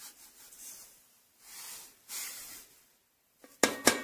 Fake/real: real